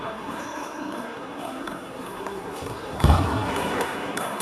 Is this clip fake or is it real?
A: fake